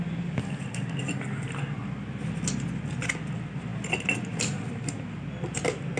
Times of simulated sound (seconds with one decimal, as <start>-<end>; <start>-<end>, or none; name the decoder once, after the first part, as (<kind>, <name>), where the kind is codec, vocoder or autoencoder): none